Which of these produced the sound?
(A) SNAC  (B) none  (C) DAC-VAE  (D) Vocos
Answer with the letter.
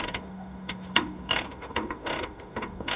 C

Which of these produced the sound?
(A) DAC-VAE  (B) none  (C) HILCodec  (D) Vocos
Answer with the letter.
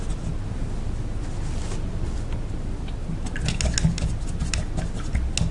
B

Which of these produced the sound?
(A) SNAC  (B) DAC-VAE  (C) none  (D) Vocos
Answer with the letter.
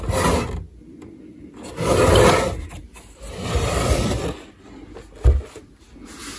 C